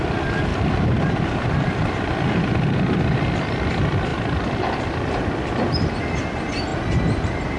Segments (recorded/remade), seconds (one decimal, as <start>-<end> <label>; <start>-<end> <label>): 0.0-7.6 remade